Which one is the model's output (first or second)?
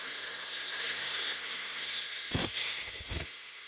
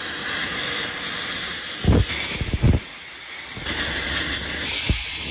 first